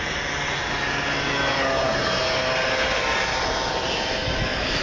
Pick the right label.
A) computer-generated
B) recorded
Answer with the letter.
B